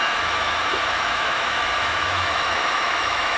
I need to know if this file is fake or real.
fake